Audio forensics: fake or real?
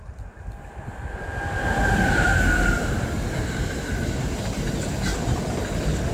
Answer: real